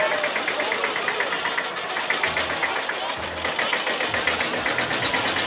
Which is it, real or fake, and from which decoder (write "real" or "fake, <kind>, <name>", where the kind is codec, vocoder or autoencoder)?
real